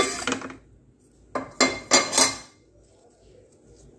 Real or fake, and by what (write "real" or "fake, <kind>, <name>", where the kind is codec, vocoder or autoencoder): real